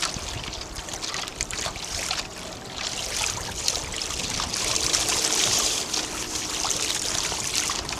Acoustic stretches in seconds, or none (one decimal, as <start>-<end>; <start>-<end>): 0.0-8.0

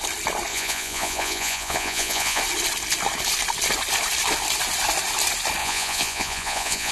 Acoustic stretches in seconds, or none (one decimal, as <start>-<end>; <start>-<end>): 0.0-0.5; 2.4-5.6